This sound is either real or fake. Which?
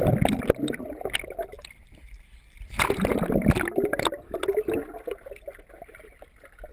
real